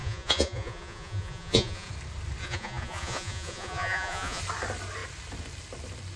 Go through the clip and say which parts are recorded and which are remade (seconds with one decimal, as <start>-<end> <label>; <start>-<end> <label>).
0.0-1.9 remade; 1.9-2.4 recorded; 2.4-4.4 remade; 4.4-6.2 recorded